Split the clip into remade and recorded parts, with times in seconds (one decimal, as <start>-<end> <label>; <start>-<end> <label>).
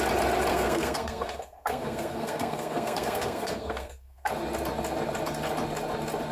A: 0.0-0.5 recorded; 0.5-4.3 remade; 4.3-6.3 recorded